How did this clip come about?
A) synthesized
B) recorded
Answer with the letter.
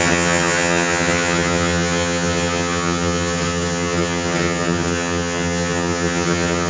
A